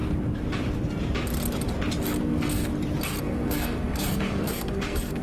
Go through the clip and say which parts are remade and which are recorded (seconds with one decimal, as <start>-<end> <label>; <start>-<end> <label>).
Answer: 0.0-2.2 recorded; 2.2-2.7 remade; 2.7-3.2 recorded; 3.2-5.2 remade